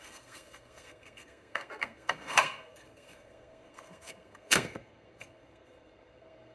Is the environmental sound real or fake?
fake